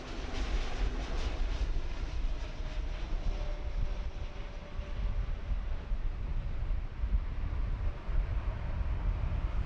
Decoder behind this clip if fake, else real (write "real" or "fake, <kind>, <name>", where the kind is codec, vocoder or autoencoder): real